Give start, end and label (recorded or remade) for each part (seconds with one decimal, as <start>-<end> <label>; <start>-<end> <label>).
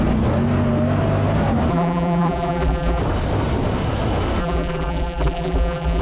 0.0-1.7 recorded; 1.7-3.0 remade; 3.0-4.4 recorded; 4.4-6.0 remade